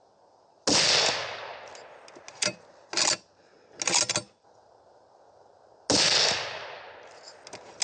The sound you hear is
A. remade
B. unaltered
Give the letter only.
B